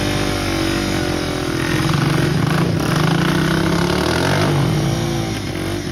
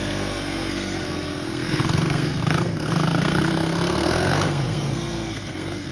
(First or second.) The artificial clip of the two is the second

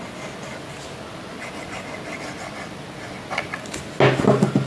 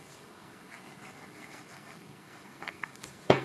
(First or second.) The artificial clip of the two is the second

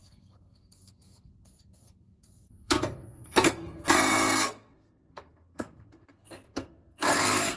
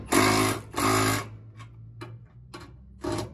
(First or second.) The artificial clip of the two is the first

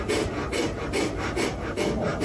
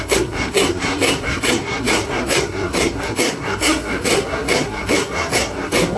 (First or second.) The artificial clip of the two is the second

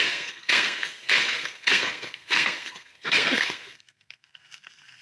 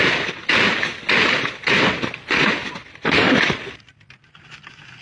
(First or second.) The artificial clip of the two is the first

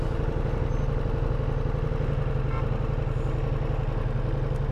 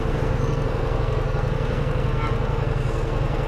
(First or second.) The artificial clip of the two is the second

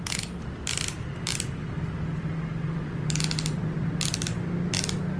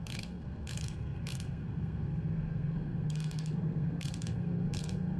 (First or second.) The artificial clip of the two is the second